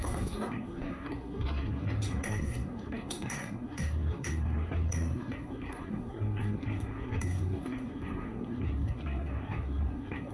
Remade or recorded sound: remade